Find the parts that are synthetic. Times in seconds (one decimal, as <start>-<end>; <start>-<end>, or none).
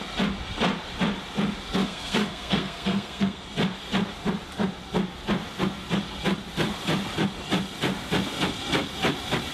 1.8-3.4